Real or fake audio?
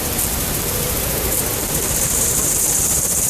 fake